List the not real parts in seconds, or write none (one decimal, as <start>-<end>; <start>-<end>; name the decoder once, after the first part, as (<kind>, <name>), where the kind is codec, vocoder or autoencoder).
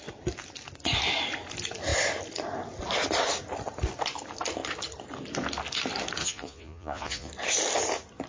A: 6.2-7.3 (vocoder, Vocos)